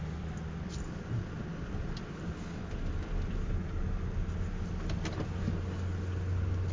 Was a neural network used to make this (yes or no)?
no